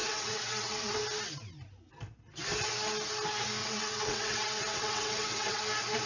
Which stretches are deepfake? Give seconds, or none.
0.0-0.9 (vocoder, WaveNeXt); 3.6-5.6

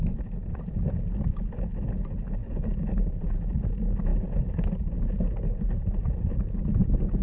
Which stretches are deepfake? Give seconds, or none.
2.4-3.1 (codec, DAC)

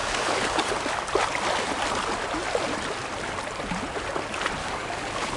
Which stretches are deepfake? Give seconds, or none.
0.0-0.7 (codec, DAC); 4.6-5.4

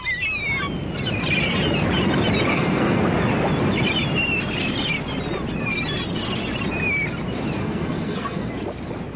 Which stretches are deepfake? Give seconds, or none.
2.5-3.0 (codec, SNAC); 7.6-8.5

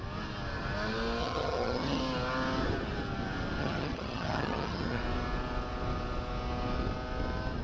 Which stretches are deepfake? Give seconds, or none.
1.2-2.0 (vocoder, HiFi-GAN); 3.6-5.0

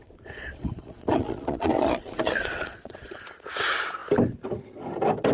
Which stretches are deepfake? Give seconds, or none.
0.0-3.2 (vocoder, Vocos)

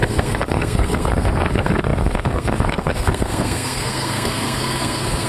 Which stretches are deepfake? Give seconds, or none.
0.0-5.3 (codec, SNAC)